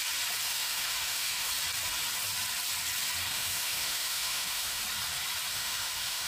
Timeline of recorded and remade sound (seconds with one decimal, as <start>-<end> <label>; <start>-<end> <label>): 0.0-0.5 recorded; 0.5-1.5 remade; 1.5-3.3 recorded; 3.3-4.8 remade; 4.8-5.5 recorded; 5.5-6.3 remade